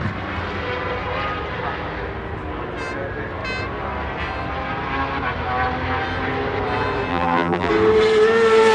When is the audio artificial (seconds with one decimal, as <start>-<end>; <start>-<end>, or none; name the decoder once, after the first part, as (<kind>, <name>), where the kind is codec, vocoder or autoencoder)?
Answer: 7.1-7.7 (vocoder, BigVGAN v2)